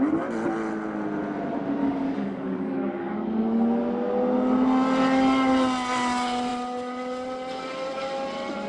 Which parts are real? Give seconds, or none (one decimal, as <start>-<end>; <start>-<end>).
0.0-1.8; 3.1-8.7